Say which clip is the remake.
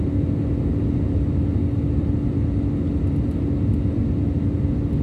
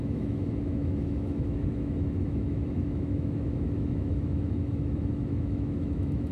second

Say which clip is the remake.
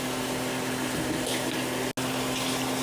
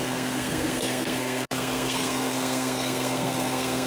second